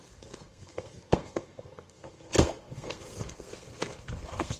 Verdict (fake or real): fake